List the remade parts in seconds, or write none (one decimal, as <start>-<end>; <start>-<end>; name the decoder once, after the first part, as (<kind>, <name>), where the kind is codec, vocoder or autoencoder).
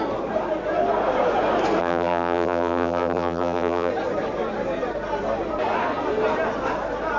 1.8-3.9 (vocoder, BigVGAN v2)